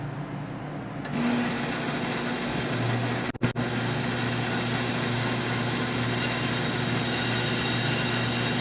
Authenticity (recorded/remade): recorded